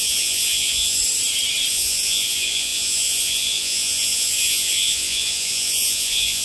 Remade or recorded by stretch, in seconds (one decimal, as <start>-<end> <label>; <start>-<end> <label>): 0.0-1.0 remade; 1.0-1.7 recorded; 1.7-6.4 remade